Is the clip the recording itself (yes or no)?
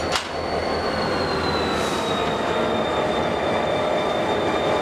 yes